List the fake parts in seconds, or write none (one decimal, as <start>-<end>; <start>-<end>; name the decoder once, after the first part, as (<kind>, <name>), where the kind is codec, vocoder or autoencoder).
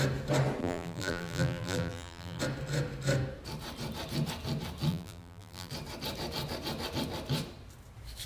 0.6-2.4 (vocoder, BigVGAN v2); 4.9-5.7